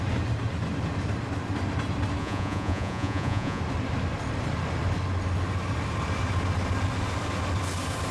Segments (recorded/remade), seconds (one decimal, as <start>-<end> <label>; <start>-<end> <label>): 0.0-2.2 recorded; 2.2-3.6 remade; 3.6-8.1 recorded